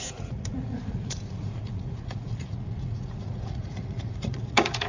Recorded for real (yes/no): no